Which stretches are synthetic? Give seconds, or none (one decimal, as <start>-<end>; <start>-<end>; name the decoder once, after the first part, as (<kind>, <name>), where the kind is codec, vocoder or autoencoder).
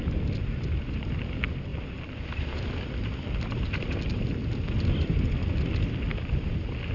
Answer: none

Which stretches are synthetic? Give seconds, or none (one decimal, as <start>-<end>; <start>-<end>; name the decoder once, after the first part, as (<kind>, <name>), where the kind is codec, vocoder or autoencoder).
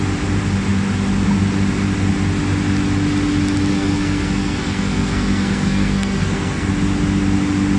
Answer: 3.7-6.7 (codec, SNAC)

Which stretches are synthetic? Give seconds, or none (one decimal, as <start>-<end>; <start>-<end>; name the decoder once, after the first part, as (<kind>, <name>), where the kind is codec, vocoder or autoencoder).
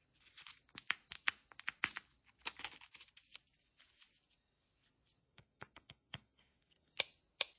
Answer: 5.2-6.9 (codec, SNAC)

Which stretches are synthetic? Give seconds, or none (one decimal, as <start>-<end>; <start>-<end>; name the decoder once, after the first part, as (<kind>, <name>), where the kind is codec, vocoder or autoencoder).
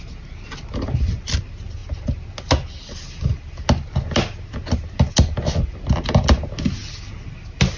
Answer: none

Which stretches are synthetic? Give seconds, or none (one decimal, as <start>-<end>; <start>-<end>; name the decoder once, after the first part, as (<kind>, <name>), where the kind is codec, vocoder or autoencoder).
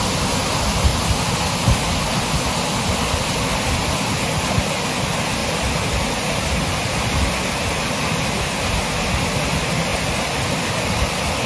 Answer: none